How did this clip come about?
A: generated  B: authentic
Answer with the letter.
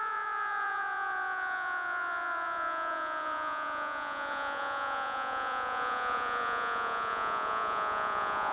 A